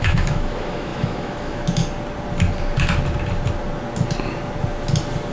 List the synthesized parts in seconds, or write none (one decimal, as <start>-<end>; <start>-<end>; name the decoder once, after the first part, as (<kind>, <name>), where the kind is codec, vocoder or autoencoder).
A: 0.0-1.8 (autoencoder, DAC-VAE)